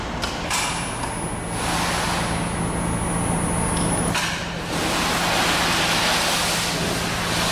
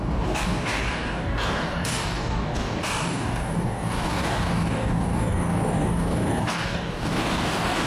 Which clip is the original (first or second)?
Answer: first